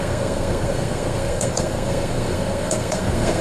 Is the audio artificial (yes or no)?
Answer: yes